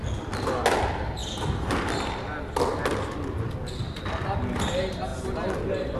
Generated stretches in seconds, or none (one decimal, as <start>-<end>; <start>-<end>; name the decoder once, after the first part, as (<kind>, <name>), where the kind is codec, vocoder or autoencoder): none